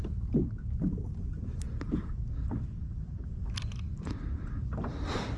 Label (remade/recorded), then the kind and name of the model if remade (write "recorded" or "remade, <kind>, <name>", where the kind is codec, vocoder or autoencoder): recorded